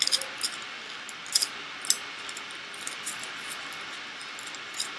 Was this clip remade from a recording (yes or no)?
no